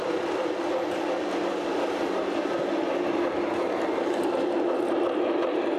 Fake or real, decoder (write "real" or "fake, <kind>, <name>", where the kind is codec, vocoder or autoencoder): real